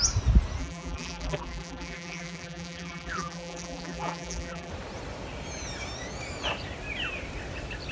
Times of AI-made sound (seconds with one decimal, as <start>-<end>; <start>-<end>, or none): 0.6-4.7